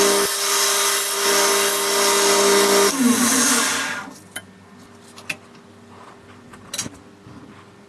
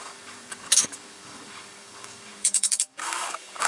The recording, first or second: first